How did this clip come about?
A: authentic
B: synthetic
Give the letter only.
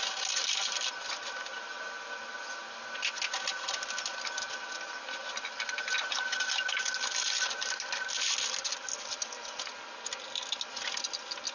A